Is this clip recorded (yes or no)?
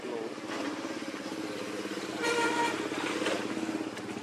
yes